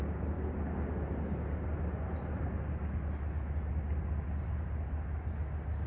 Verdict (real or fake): real